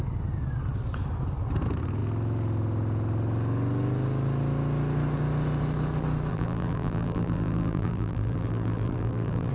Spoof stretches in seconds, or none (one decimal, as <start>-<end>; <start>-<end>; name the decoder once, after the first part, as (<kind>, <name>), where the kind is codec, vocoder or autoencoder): 6.3-9.5 (vocoder, BigVGAN v2)